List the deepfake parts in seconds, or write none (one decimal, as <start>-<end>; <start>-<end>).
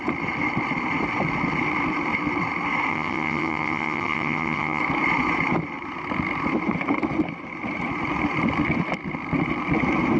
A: 2.9-4.8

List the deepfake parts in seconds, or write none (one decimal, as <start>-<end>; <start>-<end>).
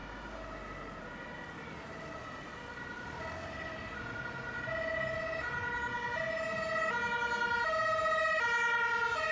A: none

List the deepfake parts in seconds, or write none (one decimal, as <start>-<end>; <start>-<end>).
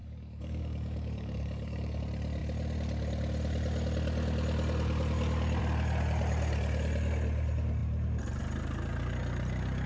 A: 0.0-2.0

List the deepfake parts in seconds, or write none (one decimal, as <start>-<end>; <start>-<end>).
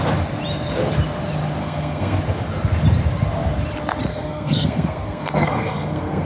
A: 1.6-2.2; 4.1-6.3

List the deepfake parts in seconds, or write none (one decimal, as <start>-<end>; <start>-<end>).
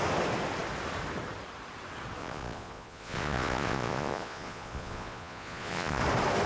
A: 2.2-6.0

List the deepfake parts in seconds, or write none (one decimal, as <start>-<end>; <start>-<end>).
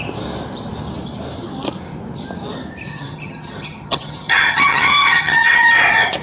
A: 2.9-5.7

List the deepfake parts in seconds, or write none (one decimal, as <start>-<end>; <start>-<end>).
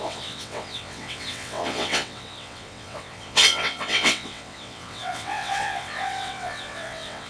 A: 0.0-7.3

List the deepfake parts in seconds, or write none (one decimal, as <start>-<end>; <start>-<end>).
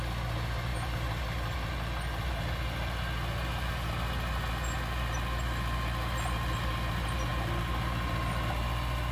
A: none